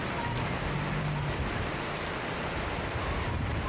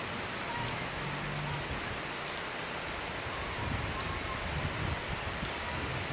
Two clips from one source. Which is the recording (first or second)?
second